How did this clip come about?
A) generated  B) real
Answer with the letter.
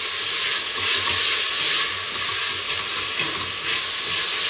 B